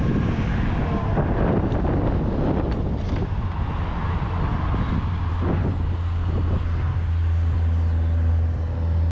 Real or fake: real